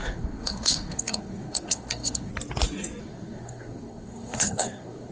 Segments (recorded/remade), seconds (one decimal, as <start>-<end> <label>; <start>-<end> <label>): 0.0-2.3 remade; 2.3-3.0 recorded; 3.0-5.1 remade